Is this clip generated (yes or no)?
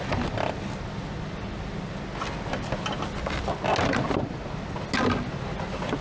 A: no